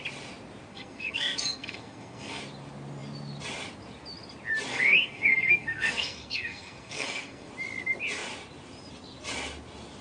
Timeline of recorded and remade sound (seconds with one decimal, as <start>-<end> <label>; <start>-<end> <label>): 0.0-0.7 recorded; 0.7-2.4 remade; 2.4-4.7 recorded; 4.7-7.5 remade; 7.5-10.0 recorded